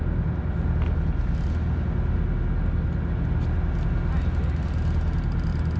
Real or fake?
real